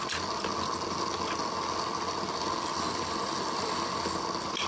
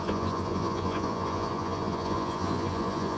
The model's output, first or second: second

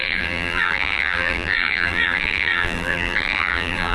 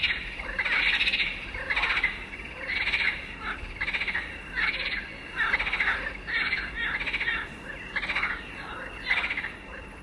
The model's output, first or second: first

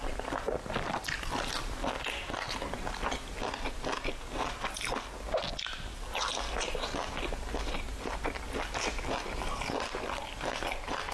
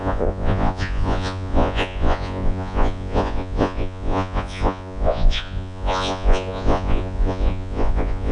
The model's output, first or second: second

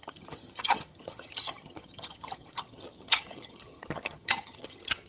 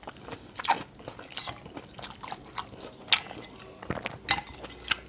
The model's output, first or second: first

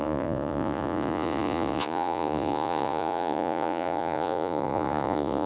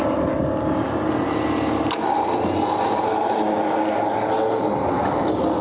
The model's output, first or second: first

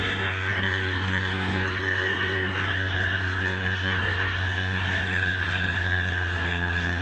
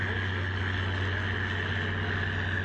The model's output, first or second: first